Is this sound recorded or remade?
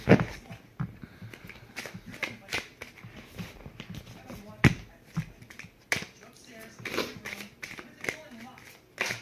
recorded